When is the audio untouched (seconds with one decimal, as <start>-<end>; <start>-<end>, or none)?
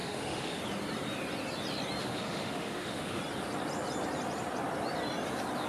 0.6-2.0; 3.2-5.7